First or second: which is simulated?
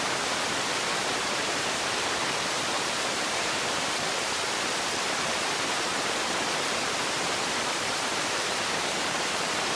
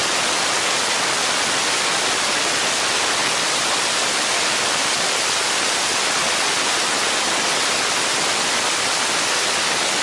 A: first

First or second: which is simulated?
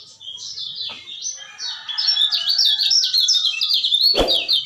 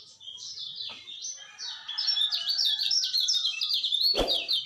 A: second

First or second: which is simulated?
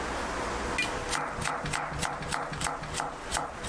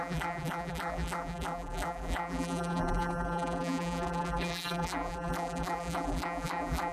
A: second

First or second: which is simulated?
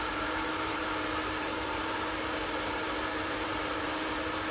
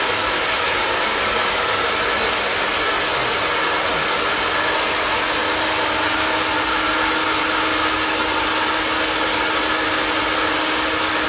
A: first